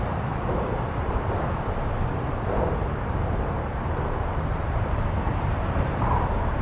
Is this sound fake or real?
fake